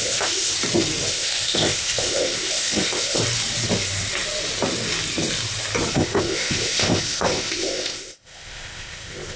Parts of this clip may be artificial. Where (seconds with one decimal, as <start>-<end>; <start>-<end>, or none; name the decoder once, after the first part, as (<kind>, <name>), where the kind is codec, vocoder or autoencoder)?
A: 0.0-0.5 (codec, ZipCodec); 1.1-3.2; 5.9-9.4